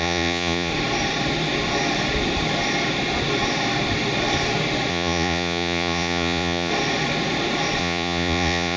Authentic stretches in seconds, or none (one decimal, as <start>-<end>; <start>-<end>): 0.7-4.9; 6.7-7.8